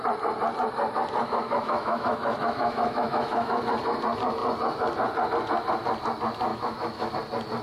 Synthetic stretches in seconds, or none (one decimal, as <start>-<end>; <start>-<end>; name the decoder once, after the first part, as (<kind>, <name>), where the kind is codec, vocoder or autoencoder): 1.2-3.6 (autoencoder, DAC-VAE); 6.5-7.1

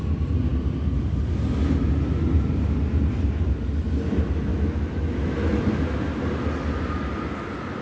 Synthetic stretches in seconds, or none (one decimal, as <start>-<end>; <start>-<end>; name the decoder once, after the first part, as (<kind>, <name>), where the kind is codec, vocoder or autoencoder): 4.5-5.6 (autoencoder, DAC-VAE)

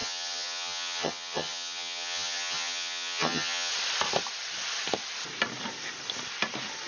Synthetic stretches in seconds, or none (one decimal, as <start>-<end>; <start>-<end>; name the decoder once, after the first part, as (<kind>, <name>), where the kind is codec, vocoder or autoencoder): 0.0-3.7 (vocoder, HiFi-GAN)

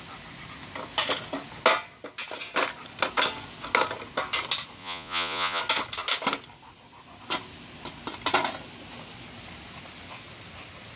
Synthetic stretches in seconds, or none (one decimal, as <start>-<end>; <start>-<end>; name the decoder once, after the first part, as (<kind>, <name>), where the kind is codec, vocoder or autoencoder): 4.8-5.6 (vocoder, Vocos)